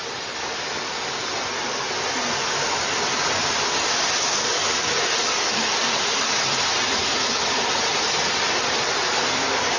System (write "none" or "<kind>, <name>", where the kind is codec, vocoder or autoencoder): none